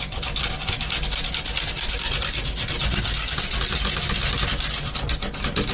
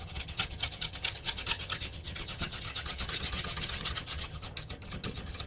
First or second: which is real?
first